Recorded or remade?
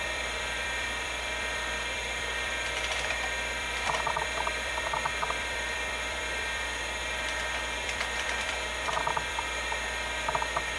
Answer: remade